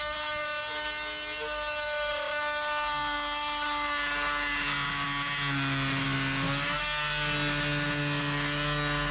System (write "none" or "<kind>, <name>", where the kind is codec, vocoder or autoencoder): none